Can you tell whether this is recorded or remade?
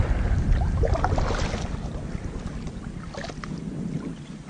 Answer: recorded